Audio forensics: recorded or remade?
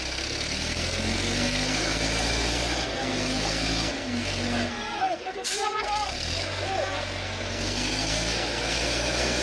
remade